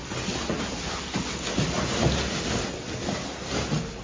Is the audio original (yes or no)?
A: yes